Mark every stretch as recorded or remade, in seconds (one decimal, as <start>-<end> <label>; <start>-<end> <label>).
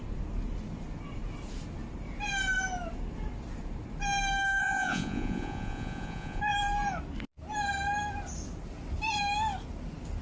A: 0.0-4.6 recorded; 4.6-6.4 remade; 6.4-10.2 recorded